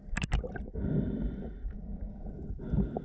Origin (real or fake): real